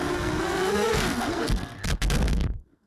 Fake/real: fake